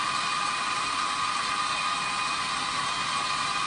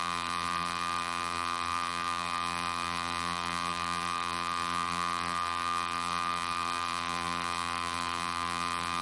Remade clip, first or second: second